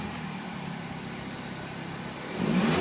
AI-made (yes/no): no